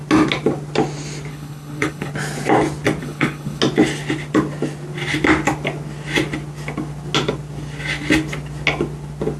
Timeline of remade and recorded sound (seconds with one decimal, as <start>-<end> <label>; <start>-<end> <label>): 0.0-1.3 recorded; 1.3-2.1 remade; 2.1-3.0 recorded; 3.0-3.6 remade; 3.6-9.4 recorded